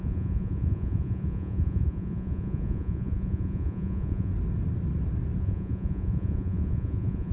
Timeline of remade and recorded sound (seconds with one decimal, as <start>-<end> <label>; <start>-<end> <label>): 0.0-4.3 remade; 4.3-5.4 recorded; 5.4-7.3 remade